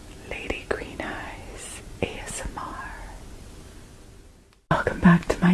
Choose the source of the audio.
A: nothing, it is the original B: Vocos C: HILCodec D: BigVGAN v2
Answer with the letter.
A